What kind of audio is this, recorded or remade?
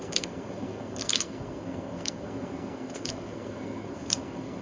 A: remade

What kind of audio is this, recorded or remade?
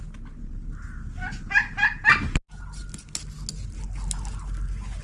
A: recorded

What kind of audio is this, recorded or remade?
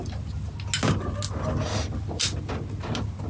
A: recorded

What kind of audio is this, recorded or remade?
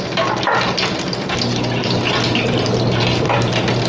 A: recorded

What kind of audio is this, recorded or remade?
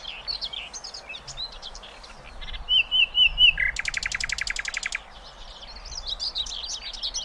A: recorded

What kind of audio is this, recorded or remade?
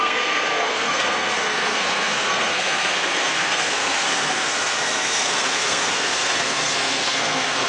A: remade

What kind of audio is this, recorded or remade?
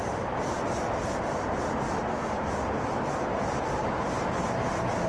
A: recorded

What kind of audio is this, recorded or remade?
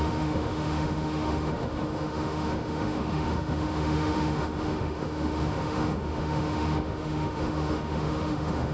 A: remade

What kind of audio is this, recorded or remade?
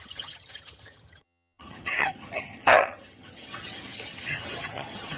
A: remade